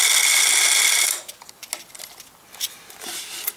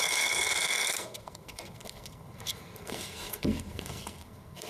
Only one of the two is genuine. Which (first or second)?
first